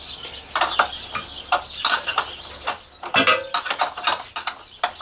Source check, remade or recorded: recorded